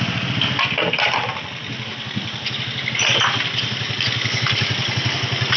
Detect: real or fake real